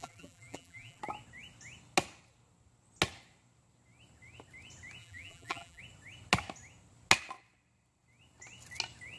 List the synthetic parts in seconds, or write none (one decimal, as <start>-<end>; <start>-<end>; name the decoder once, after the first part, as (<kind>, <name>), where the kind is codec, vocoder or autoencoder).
0.0-1.0 (vocoder, BigVGAN v2); 5.0-5.8